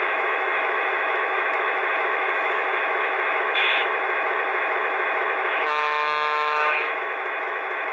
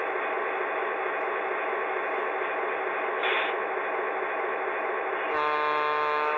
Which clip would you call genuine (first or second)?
second